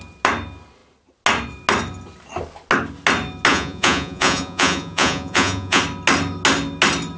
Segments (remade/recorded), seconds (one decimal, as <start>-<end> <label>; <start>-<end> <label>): 0.0-3.5 recorded; 3.5-5.8 remade; 5.8-7.2 recorded